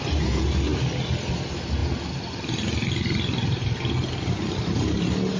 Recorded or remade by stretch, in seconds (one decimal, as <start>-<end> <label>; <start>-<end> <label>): 0.0-5.4 recorded